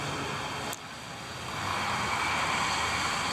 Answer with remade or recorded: recorded